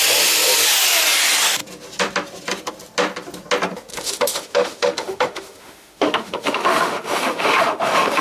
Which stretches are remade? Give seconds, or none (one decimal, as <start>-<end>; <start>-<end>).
3.9-8.2